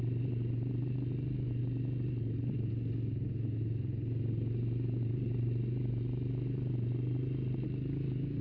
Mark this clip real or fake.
real